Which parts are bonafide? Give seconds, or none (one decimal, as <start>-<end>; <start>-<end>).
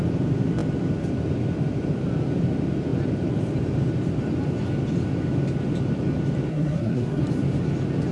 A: 0.0-6.5; 7.2-8.1